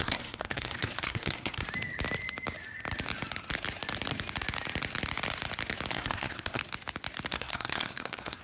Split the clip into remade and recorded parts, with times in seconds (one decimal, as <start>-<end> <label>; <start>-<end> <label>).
0.0-1.6 remade; 1.6-5.9 recorded; 5.9-6.6 remade; 6.6-7.3 recorded; 7.3-8.4 remade